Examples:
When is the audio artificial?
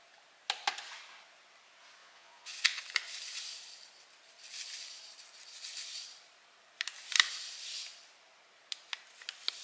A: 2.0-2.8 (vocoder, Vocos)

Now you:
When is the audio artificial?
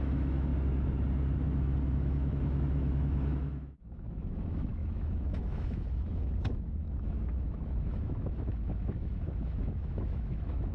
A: 0.0-0.5 (autoencoder, DAC-VAE); 1.9-10.7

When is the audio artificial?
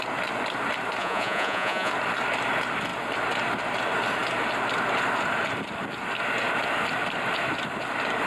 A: 1.0-1.9 (vocoder, Vocos)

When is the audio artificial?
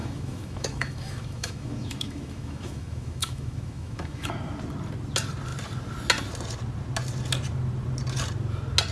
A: 0.0-4.3 (autoencoder, DAC-VAE)